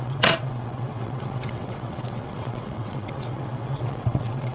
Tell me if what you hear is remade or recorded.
remade